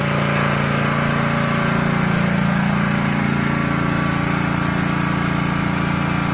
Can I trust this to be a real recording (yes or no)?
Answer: yes